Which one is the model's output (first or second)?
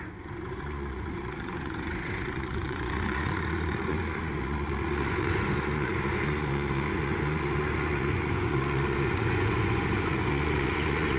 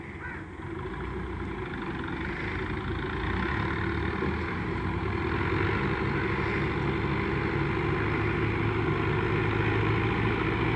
first